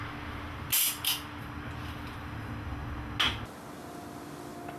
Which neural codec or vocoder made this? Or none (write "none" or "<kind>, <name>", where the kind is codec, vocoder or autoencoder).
none